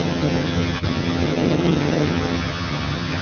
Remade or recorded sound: remade